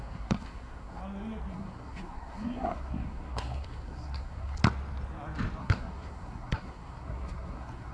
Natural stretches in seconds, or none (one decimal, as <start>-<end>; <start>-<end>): 1.0-1.5; 4.6-5.6